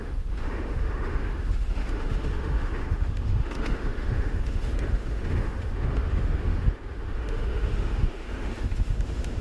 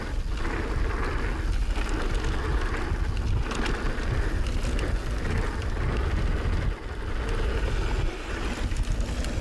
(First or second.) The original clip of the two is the second